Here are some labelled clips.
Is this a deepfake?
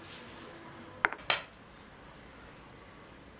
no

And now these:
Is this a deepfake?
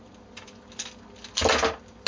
no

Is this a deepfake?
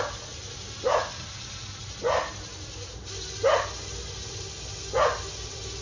no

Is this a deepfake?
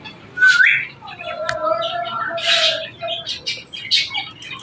no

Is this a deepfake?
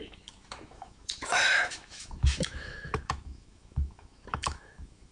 yes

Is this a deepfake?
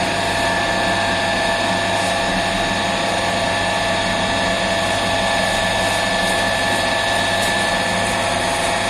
no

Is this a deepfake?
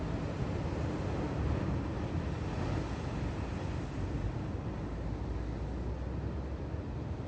no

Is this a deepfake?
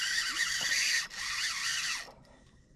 no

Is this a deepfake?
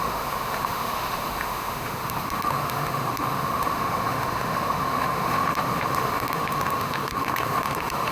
yes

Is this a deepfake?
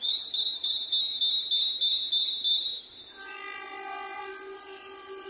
no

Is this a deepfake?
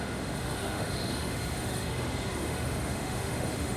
yes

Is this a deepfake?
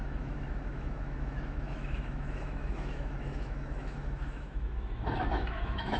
yes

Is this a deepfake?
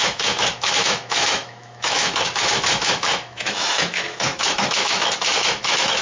yes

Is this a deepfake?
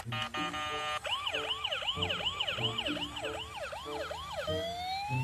no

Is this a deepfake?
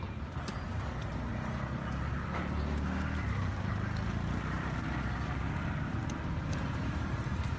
no